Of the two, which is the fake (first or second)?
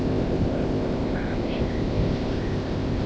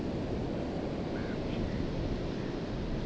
first